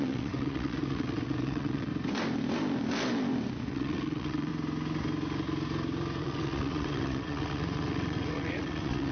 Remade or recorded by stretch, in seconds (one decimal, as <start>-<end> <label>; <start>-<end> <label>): 0.0-1.9 remade; 1.9-3.7 recorded; 3.7-4.5 remade; 4.5-6.2 recorded; 6.2-9.1 remade